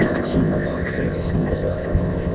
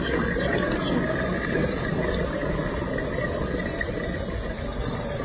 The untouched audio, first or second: second